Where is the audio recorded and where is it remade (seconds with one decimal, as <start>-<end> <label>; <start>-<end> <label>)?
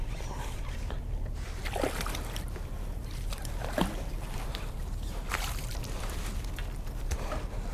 0.0-7.7 recorded